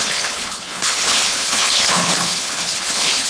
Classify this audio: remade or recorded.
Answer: remade